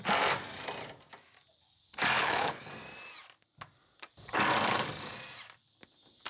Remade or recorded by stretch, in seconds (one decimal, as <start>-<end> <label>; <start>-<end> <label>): 0.0-2.2 recorded; 2.2-2.7 remade; 2.7-6.3 recorded